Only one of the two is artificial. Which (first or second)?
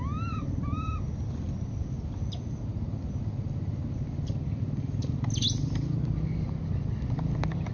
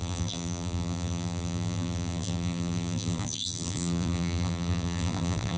second